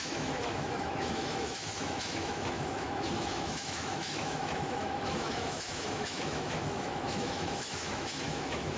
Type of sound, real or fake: fake